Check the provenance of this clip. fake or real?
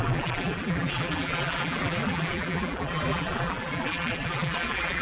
fake